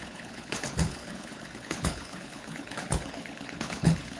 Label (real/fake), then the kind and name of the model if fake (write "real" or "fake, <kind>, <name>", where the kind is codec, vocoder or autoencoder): fake, codec, HILCodec